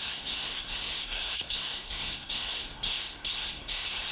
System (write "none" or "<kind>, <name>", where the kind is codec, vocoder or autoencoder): codec, SNAC